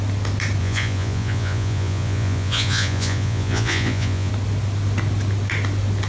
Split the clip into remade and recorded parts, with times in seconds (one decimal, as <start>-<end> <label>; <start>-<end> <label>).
0.0-0.6 recorded; 0.6-4.3 remade; 4.3-6.1 recorded